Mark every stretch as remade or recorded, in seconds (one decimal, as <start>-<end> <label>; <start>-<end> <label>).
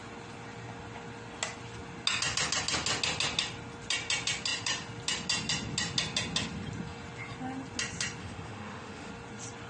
0.0-8.2 recorded; 8.2-9.1 remade; 9.1-9.7 recorded